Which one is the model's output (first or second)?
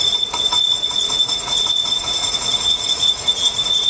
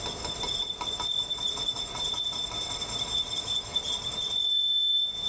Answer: first